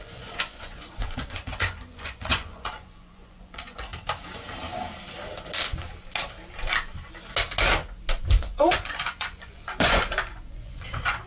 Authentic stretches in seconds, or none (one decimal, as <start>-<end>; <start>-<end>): 3.9-8.3